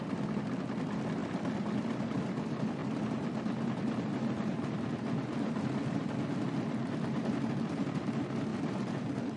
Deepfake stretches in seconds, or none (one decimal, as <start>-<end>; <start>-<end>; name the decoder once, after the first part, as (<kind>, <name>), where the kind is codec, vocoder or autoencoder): 1.2-2.2 (vocoder, BigVGAN v2); 2.8-6.1; 8.5-9.4